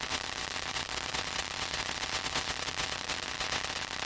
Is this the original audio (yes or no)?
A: no